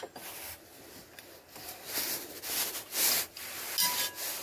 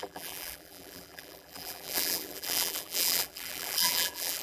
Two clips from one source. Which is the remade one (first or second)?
second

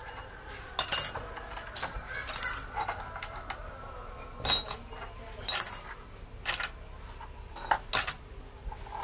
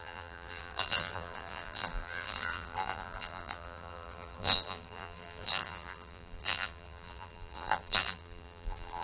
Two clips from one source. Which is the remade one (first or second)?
second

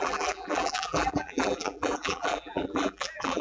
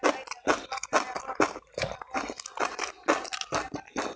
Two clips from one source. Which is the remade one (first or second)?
first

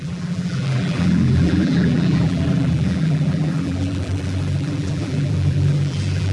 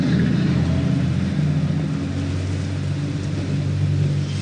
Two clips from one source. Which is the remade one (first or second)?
first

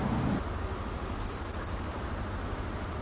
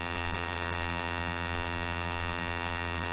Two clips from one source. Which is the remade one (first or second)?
second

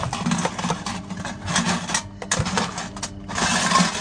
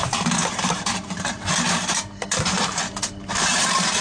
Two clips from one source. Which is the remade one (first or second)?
second